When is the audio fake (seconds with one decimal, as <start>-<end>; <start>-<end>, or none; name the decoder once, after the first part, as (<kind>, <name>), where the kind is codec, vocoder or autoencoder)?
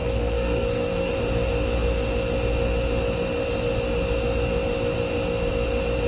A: 0.0-1.1 (codec, SNAC)